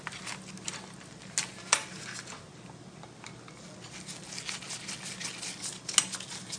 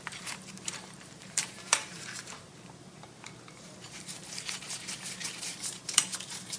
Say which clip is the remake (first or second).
second